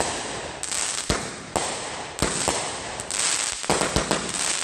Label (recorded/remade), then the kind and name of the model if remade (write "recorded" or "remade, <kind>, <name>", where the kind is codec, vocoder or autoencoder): recorded